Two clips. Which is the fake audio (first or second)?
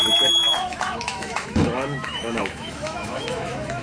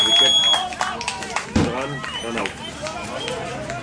first